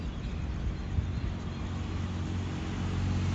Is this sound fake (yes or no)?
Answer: no